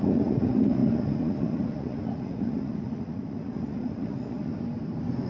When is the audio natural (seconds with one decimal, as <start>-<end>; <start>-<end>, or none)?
4.5-5.3